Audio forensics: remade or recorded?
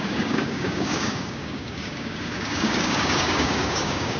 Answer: remade